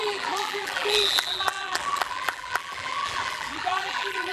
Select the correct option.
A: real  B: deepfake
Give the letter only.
B